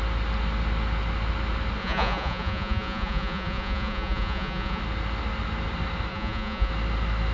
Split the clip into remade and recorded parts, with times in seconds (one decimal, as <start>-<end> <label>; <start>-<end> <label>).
0.0-1.8 recorded; 1.8-4.8 remade; 4.8-6.1 recorded; 6.1-6.7 remade; 6.7-7.3 recorded